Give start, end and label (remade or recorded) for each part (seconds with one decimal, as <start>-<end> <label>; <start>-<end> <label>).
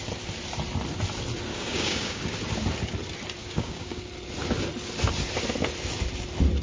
0.0-1.5 recorded; 1.5-2.2 remade; 2.2-3.4 recorded; 3.4-4.1 remade; 4.1-6.6 recorded